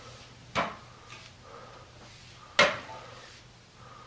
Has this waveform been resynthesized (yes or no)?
no